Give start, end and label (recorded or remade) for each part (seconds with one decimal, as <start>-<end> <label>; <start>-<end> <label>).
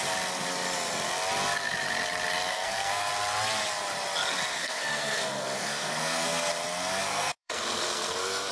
0.0-2.5 recorded; 2.5-3.1 remade; 3.1-4.5 recorded; 4.5-6.5 remade; 6.5-7.0 recorded; 7.0-8.5 remade